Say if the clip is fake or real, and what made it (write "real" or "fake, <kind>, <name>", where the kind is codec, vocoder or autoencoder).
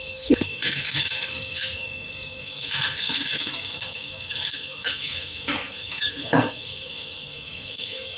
fake, codec, SNAC